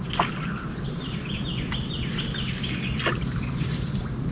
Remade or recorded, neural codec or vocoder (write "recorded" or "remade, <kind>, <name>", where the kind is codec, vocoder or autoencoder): recorded